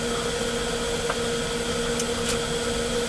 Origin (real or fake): real